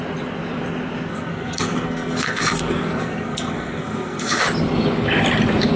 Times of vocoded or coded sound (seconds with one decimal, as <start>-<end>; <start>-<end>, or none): 1.1-4.4